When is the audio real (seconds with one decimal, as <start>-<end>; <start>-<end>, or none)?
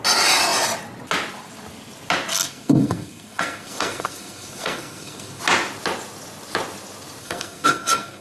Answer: 0.0-2.3; 5.4-7.2